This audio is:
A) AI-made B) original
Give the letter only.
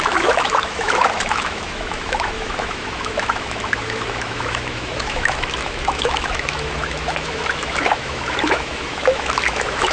A